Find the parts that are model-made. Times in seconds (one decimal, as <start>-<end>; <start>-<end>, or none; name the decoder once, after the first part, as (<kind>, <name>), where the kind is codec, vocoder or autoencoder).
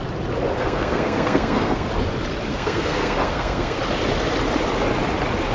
0.6-1.9 (codec, SNAC); 2.5-3.8